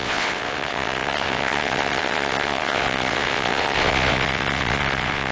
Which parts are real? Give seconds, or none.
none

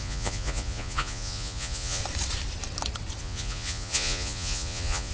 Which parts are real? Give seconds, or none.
2.0-3.2

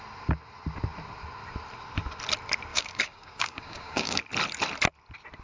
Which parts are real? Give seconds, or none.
0.0-2.7; 4.2-5.4

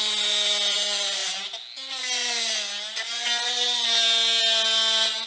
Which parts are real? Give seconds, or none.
0.0-5.3

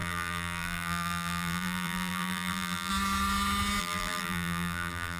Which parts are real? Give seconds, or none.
2.9-3.8

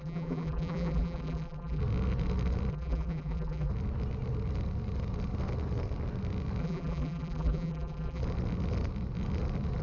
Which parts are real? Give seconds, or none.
1.8-2.7; 3.7-6.6; 8.2-9.8

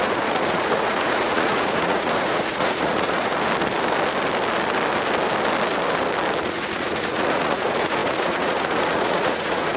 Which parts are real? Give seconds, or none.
3.3-6.4